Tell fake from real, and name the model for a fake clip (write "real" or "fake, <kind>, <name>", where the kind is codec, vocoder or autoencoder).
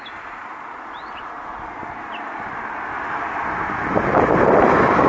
real